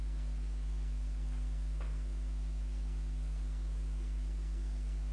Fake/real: fake